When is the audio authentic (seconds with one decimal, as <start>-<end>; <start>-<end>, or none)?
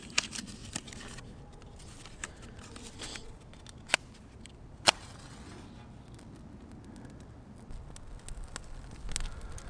0.0-9.7